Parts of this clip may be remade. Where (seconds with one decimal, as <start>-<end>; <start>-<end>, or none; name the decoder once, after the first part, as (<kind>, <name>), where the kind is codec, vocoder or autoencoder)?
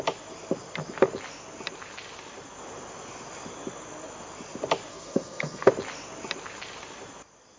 4.9-5.7 (codec, SNAC)